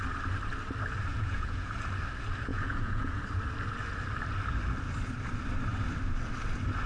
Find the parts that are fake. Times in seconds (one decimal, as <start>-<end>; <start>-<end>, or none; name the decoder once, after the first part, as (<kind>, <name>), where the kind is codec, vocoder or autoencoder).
1.1-1.7 (vocoder, Vocos); 2.5-3.2